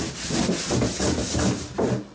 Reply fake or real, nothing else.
real